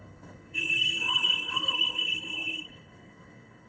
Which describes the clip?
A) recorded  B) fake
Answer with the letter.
B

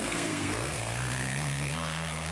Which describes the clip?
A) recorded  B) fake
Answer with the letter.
B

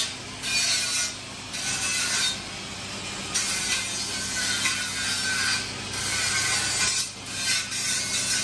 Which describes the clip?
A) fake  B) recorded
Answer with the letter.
B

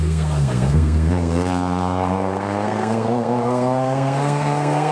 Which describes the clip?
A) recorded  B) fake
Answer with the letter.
B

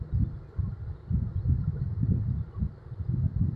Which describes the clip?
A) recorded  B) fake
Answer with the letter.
A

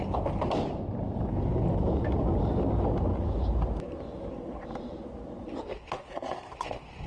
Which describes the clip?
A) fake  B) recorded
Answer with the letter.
B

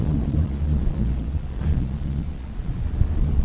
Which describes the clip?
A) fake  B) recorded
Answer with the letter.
A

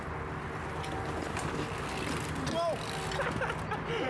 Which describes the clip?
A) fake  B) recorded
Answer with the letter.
B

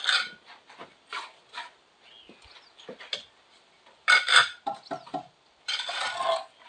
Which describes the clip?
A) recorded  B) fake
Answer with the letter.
A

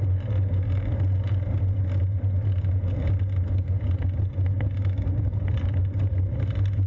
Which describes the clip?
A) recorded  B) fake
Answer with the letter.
A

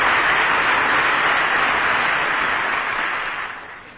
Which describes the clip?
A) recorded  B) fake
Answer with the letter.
A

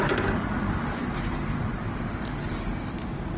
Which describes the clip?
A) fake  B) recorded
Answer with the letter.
B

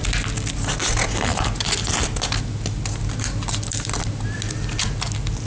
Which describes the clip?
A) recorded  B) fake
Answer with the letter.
A